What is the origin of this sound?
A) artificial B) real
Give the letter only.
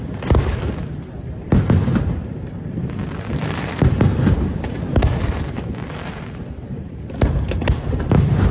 A